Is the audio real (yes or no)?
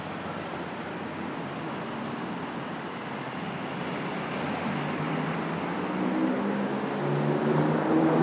yes